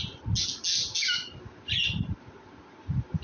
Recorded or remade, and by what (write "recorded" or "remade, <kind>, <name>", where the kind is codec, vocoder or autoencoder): recorded